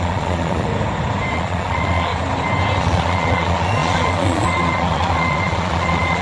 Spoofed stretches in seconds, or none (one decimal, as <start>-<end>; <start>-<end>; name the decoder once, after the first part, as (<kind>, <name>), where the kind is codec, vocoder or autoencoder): 0.0-0.7 (vocoder, Vocos); 1.3-2.1; 2.8-6.2